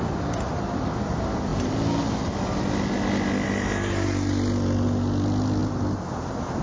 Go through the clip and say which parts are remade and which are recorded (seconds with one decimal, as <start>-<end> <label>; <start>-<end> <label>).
0.0-6.6 recorded